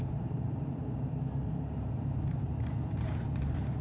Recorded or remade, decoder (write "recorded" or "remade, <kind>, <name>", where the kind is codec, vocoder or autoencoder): remade, vocoder, BigVGAN v2